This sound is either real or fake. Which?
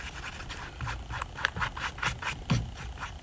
real